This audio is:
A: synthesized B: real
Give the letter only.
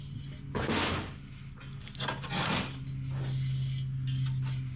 B